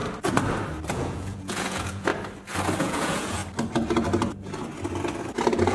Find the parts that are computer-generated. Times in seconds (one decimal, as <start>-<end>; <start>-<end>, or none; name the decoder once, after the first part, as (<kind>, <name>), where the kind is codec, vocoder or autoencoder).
0.9-2.1 (vocoder, Vocos); 2.8-3.4